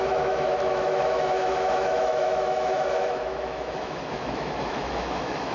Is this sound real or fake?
fake